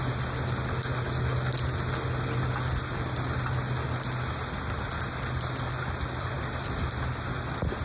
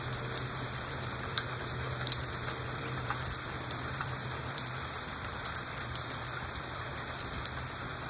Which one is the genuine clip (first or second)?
first